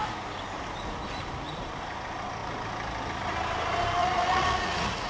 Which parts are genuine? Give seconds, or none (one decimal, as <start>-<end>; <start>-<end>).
0.0-4.0